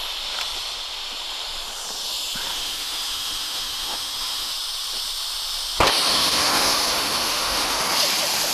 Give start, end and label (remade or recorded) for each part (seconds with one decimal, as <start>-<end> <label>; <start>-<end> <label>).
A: 0.0-2.5 recorded; 2.5-4.5 remade; 4.5-6.1 recorded; 6.1-7.8 remade; 7.8-8.5 recorded